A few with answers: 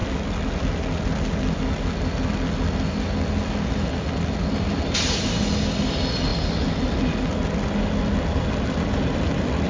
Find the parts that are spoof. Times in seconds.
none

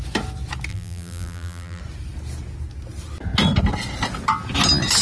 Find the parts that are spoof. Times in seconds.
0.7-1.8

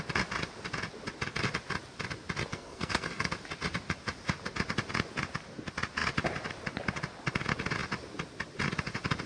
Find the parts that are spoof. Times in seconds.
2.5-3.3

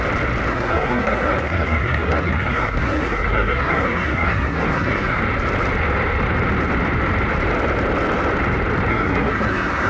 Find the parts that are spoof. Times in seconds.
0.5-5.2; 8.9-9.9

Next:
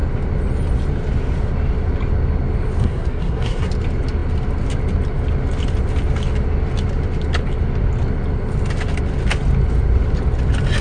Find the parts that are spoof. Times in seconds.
2.8-3.7

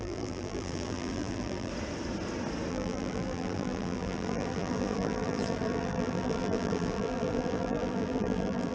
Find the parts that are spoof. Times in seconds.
0.0-1.7; 2.7-8.7